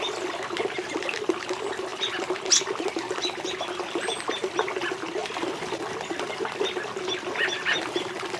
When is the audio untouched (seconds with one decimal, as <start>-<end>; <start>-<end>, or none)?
0.0-8.4